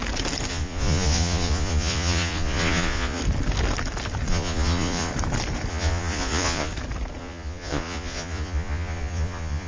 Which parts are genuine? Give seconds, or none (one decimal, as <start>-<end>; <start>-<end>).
0.0-0.5; 3.2-4.3; 5.1-5.7; 6.7-7.2